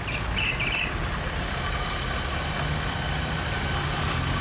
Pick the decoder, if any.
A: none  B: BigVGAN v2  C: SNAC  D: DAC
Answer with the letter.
A